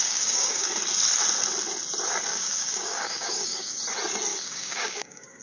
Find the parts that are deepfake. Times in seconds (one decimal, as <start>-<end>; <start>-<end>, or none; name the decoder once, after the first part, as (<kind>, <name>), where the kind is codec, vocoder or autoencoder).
0.0-0.7 (codec, DAC); 2.3-3.8; 4.3-5.4